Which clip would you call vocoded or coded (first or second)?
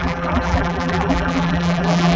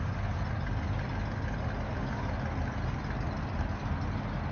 first